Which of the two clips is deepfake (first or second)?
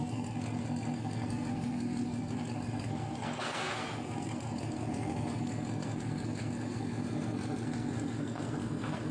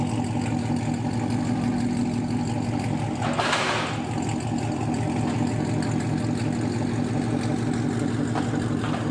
first